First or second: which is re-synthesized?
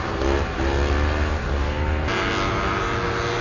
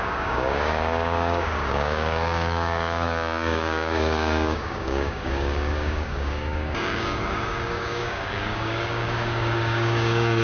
second